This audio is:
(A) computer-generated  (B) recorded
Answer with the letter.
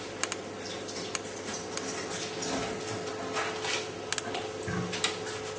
B